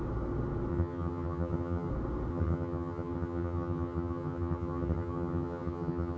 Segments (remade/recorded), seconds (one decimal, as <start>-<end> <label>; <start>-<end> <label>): 0.0-0.7 recorded; 0.7-1.9 remade; 1.9-2.3 recorded; 2.3-6.2 remade